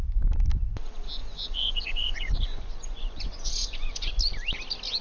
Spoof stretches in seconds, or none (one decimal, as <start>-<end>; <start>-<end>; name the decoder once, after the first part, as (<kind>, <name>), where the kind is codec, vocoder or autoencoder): 1.2-4.2 (vocoder, Vocos)